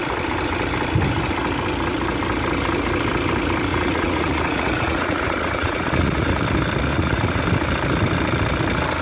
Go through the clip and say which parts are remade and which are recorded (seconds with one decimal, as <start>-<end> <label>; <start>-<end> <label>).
0.0-3.7 recorded; 3.7-6.4 remade; 6.4-6.9 recorded; 6.9-7.4 remade; 7.4-9.0 recorded